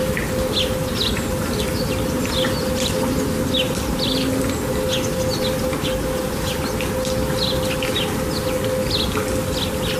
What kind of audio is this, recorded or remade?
recorded